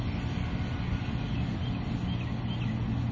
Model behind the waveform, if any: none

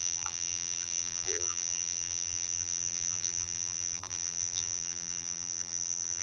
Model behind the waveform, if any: vocoder, BigVGAN v2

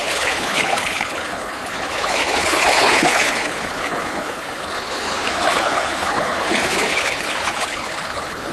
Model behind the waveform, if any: codec, HILCodec